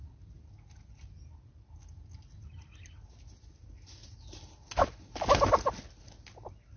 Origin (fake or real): real